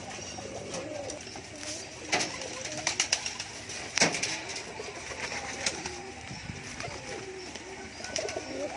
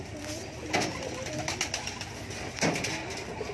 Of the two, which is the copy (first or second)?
first